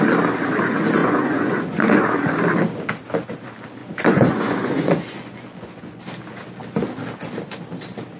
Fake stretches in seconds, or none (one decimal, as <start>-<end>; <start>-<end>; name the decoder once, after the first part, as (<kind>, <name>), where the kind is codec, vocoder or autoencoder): 1.0-2.0 (vocoder, Vocos); 3.8-6.0